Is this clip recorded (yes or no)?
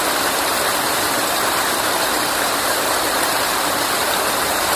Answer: no